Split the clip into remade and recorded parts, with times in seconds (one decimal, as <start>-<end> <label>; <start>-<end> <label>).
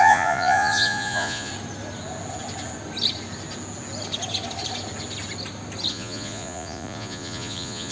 0.0-1.5 remade; 1.5-5.9 recorded; 5.9-7.9 remade